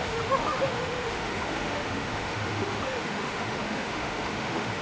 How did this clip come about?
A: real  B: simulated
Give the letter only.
B